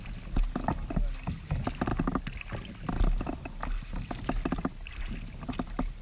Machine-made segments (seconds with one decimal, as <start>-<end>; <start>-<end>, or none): none